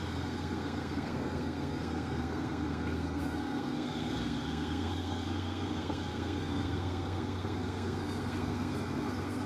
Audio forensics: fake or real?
fake